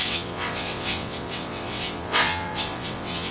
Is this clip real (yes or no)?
no